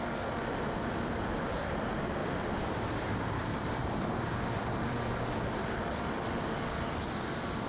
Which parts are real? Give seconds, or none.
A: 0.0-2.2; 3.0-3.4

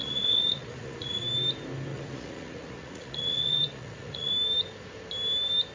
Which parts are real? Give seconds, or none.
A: 1.2-1.9; 4.3-5.7

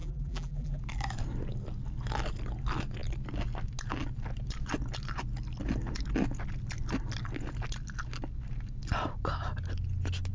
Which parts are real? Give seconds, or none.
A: 0.8-10.3

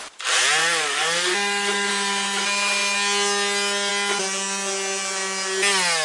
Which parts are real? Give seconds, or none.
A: 0.0-0.6; 1.9-6.0

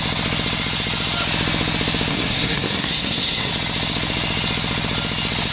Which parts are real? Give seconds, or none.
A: 0.0-2.1; 3.5-5.5

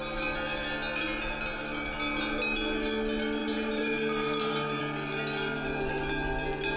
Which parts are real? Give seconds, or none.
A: 0.0-3.4; 4.8-6.8

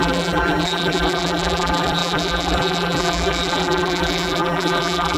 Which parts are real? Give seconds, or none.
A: none

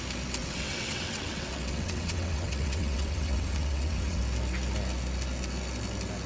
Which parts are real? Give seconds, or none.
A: 0.0-0.4; 4.2-6.3